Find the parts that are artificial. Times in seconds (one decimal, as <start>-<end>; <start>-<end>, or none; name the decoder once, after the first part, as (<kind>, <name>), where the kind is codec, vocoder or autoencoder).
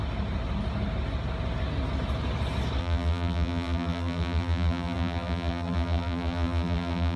2.8-7.2 (vocoder, BigVGAN v2)